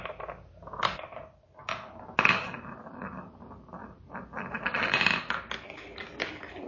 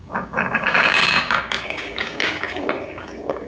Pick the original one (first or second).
first